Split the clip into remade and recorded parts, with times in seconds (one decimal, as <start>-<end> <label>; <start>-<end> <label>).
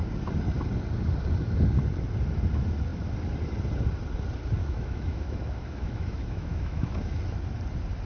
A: 0.0-4.6 recorded; 4.6-7.2 remade; 7.2-8.1 recorded